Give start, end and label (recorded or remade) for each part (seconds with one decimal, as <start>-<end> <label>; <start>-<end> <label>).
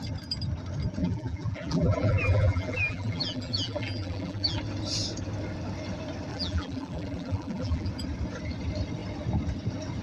0.0-1.0 recorded; 1.0-4.6 remade; 4.6-6.3 recorded; 6.3-7.9 remade; 7.9-10.0 recorded